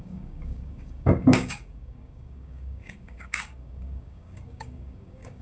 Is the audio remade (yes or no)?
yes